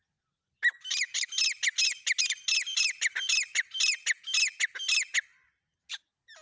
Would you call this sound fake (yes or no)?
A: no